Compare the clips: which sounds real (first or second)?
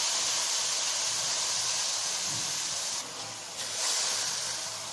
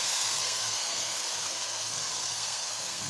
first